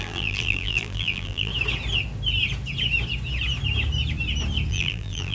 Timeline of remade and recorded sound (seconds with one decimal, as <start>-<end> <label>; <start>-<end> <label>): 0.0-1.5 remade; 1.5-4.7 recorded; 4.7-5.3 remade